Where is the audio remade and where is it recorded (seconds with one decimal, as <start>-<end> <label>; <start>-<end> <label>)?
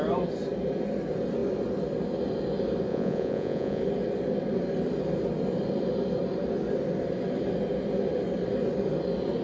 0.0-2.9 recorded; 2.9-3.8 remade; 3.8-9.4 recorded